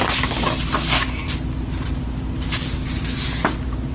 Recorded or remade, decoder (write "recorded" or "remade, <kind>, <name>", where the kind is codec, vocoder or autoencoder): recorded